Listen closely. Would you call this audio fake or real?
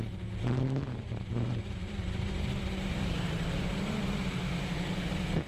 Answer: fake